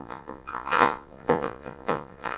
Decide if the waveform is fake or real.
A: fake